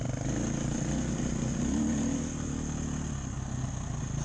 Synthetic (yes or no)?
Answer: no